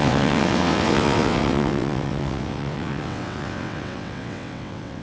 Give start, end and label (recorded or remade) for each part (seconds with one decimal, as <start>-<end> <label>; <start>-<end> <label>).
0.0-5.0 remade